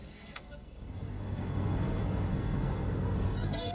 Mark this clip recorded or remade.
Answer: remade